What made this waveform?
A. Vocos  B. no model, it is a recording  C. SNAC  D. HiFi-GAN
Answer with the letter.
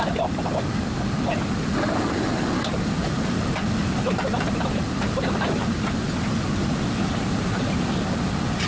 B